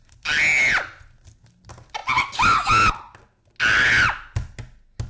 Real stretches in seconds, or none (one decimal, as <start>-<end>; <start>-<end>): 0.0-5.1